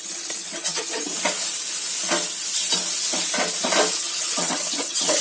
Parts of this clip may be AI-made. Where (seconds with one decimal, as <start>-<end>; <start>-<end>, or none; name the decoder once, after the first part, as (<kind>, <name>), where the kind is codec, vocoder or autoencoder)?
0.0-1.1 (vocoder, HiFi-GAN); 3.9-5.2